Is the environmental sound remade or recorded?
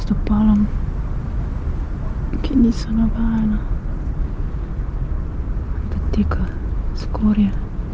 recorded